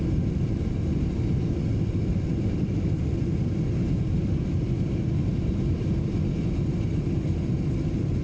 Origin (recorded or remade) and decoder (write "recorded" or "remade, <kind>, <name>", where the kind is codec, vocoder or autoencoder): recorded